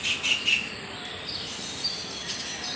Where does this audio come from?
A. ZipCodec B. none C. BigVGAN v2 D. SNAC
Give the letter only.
B